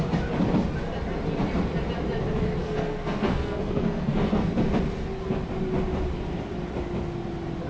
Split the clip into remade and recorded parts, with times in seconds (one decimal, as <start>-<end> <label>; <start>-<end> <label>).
0.0-2.6 recorded; 2.6-4.7 remade; 4.7-7.7 recorded